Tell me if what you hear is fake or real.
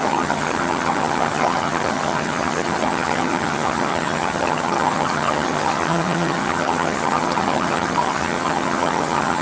fake